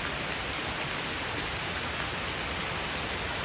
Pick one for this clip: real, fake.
real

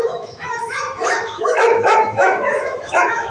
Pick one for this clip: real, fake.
fake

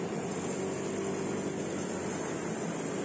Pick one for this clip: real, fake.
real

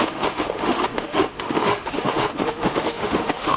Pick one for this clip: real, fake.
fake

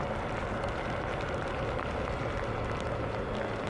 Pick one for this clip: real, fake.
real